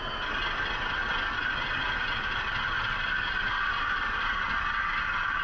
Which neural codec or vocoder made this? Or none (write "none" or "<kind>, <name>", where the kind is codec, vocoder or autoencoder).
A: none